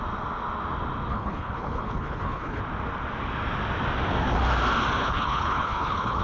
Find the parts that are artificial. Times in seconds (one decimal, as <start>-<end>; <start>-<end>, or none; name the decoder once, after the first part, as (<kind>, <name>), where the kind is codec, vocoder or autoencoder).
1.1-2.6 (codec, HILCodec); 5.0-6.2